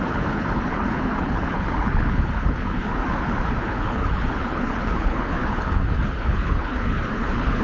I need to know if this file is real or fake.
fake